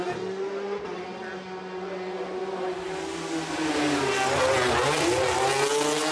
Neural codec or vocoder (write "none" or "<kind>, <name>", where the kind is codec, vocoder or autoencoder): none